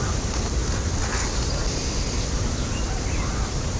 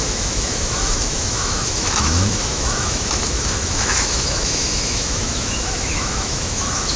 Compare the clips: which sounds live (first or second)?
first